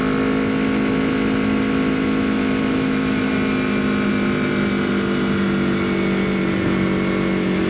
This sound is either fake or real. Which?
real